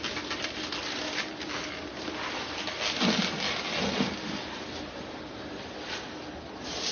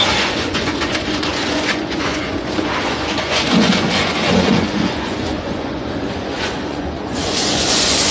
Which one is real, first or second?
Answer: first